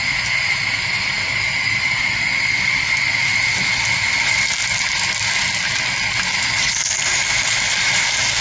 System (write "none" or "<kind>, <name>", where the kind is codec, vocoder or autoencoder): none